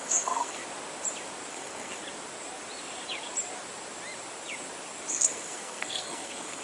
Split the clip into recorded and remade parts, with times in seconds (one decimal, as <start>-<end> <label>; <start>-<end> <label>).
0.0-0.6 remade; 0.6-1.5 recorded; 1.5-2.0 remade; 2.0-5.1 recorded; 5.1-6.6 remade